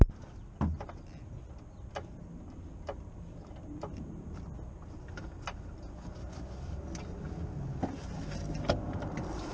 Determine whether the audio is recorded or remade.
recorded